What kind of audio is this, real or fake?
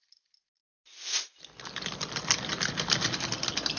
fake